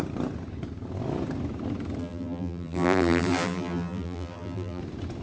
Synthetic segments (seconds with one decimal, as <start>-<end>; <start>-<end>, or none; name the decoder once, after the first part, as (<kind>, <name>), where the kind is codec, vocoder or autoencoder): 2.0-4.8 (vocoder, BigVGAN v2)